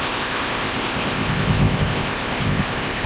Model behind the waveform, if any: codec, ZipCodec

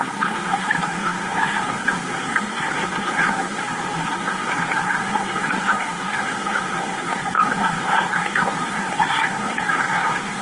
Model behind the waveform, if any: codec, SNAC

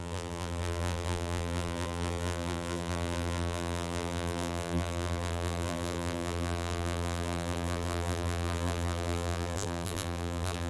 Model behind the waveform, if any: vocoder, BigVGAN v2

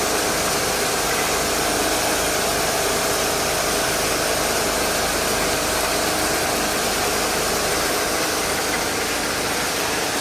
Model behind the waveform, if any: none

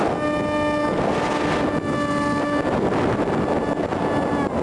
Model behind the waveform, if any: none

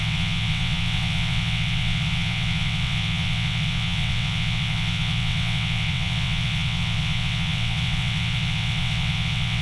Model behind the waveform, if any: vocoder, WaveNeXt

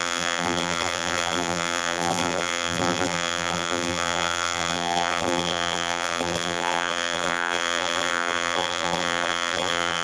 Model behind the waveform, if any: vocoder, BigVGAN v2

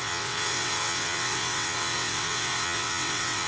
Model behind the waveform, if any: vocoder, WaveNeXt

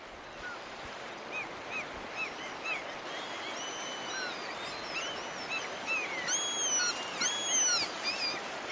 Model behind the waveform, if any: none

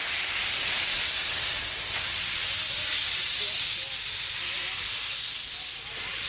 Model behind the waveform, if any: vocoder, BigVGAN v2